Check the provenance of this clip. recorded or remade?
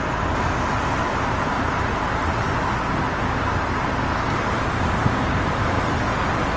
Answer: recorded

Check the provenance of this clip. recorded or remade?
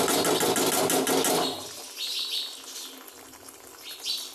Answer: recorded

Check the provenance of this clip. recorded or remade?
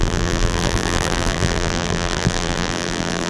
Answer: remade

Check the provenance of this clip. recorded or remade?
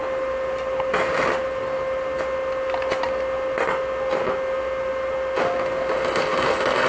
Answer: recorded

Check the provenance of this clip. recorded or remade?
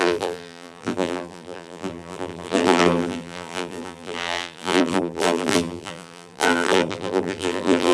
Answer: remade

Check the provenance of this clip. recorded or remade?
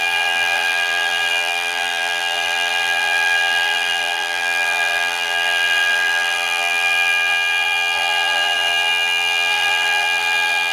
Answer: remade